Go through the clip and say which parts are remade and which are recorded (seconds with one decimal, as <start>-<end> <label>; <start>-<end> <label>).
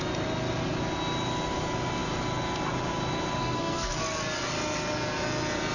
0.0-3.4 recorded; 3.4-4.0 remade; 4.0-5.7 recorded